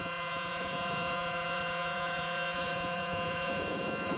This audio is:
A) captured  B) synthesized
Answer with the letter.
B